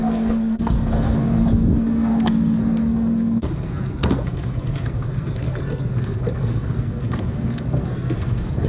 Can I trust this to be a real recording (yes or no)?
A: no